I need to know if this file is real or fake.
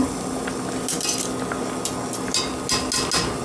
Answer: real